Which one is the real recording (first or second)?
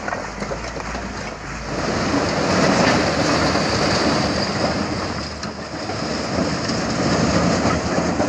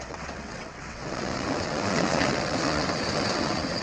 first